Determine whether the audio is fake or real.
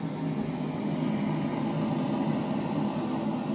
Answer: real